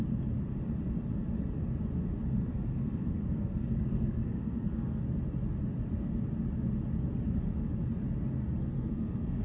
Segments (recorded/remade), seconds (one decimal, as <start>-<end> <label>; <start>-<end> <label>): 0.0-2.5 recorded; 2.5-5.0 remade; 5.0-8.6 recorded; 8.6-9.4 remade